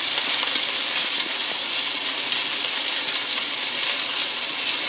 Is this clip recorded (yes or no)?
no